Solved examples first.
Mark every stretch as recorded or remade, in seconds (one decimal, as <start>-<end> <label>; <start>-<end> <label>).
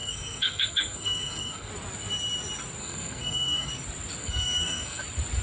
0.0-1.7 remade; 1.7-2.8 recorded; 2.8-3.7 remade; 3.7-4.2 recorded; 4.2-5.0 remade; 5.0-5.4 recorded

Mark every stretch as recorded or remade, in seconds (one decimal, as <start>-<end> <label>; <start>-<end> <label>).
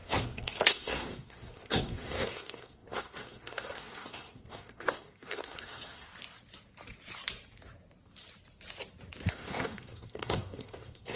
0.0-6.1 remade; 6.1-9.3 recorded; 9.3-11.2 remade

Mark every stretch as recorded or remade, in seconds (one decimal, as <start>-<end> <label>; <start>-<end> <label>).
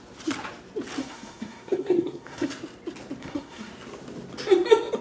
0.0-1.0 recorded; 1.0-2.5 remade; 2.5-3.2 recorded; 3.2-3.7 remade; 3.7-5.0 recorded